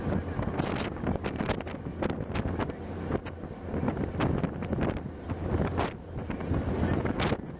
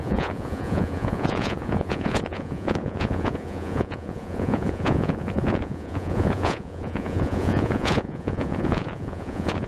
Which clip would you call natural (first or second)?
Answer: first